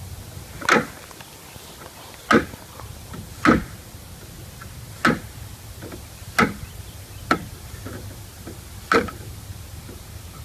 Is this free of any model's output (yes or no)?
yes